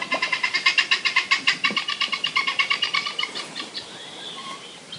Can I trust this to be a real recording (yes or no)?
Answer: no